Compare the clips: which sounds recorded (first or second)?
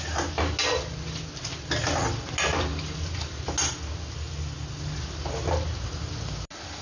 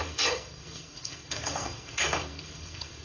first